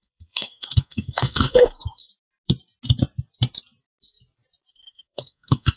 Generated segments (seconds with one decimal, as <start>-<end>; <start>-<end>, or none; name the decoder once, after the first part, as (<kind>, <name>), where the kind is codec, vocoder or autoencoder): 0.0-2.1 (codec, SNAC); 4.7-5.8